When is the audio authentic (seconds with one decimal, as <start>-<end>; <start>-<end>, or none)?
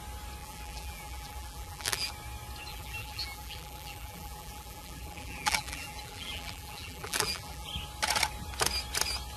0.0-0.4; 2.1-2.7; 7.7-9.4